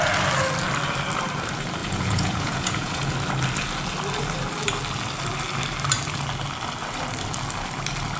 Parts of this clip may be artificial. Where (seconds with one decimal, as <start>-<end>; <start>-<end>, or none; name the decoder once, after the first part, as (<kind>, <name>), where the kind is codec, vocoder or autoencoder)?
1.8-3.1 (vocoder, Vocos)